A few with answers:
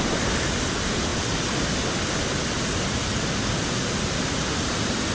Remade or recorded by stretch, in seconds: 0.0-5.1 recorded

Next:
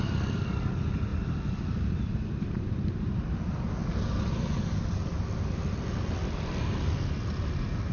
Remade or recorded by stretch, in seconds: 0.0-7.9 recorded

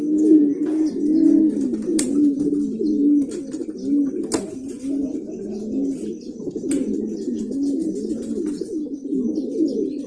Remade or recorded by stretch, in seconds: 0.0-1.9 recorded; 1.9-2.5 remade; 2.5-10.1 recorded